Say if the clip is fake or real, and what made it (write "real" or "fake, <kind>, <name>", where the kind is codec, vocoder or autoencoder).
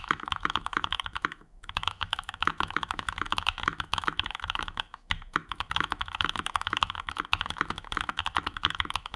fake, autoencoder, DAC-VAE